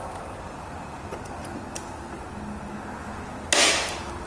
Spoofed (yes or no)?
no